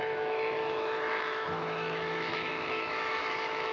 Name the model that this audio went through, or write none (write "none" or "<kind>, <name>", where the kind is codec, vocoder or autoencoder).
autoencoder, DAC-VAE